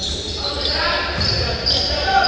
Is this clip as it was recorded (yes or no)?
yes